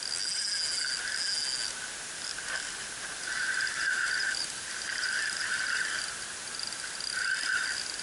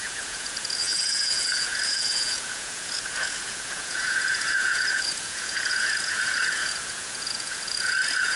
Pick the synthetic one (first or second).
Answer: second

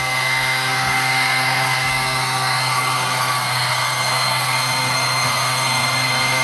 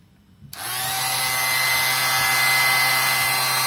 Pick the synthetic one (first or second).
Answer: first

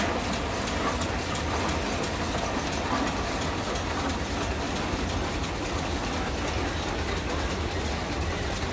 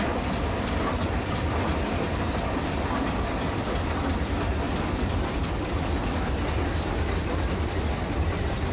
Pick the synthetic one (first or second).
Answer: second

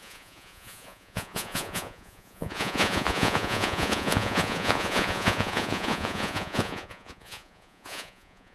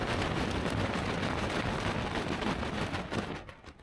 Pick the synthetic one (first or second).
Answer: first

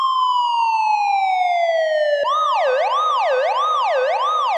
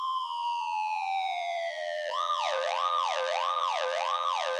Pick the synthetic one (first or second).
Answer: second